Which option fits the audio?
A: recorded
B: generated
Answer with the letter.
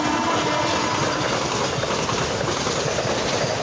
A